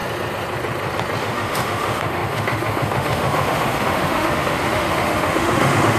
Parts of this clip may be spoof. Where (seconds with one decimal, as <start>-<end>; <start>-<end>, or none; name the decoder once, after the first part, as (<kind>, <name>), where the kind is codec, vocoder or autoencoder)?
1.2-6.0 (autoencoder, DAC-VAE)